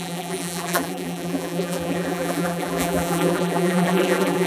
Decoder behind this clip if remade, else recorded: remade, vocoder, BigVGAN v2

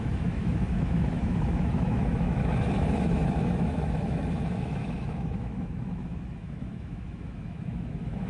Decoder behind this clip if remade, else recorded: remade, autoencoder, DAC-VAE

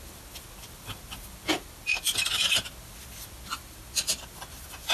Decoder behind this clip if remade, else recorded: recorded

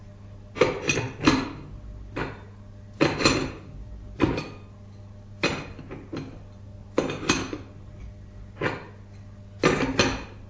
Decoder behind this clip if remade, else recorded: recorded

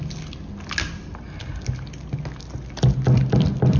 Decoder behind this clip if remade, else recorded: recorded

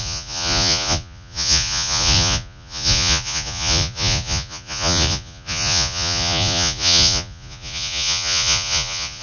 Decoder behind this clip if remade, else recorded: remade, vocoder, Vocos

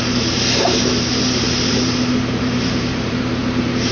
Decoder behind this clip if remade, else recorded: remade, vocoder, BigVGAN v2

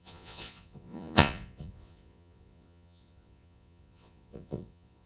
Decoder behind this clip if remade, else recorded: remade, vocoder, Vocos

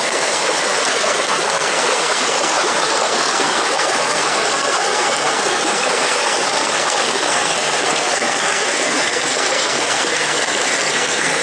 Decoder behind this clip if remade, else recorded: remade, codec, SNAC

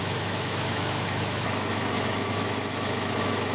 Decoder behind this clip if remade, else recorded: remade, autoencoder, DAC-VAE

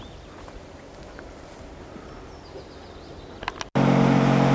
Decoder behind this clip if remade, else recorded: recorded